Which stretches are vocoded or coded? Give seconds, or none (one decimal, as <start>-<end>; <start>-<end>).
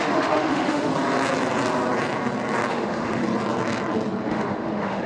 0.0-0.9; 2.7-3.2; 4.3-5.1